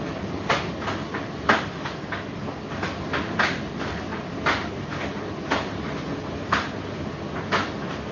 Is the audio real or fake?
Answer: real